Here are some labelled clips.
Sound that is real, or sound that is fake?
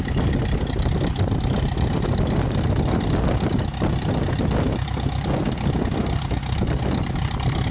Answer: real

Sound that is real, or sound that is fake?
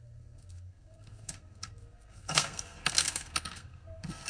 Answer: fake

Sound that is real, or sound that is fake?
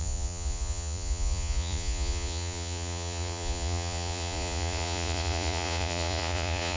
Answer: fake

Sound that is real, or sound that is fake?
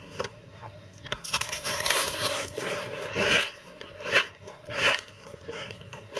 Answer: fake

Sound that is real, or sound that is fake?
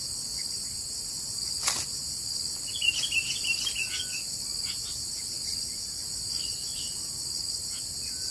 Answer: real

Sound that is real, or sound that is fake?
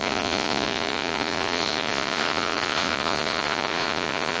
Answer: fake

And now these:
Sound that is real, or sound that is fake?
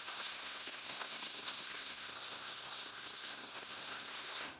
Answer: fake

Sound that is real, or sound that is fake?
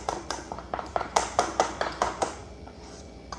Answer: fake